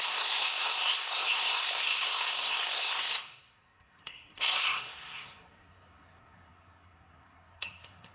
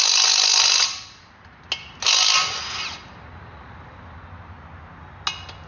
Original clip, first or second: second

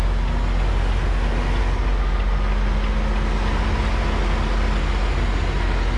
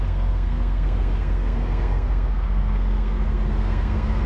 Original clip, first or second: first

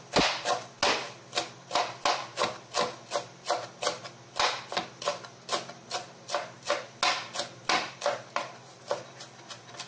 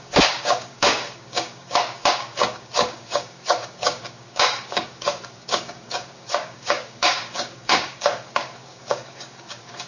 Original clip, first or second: first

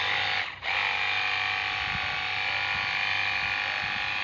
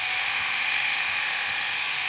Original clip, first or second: first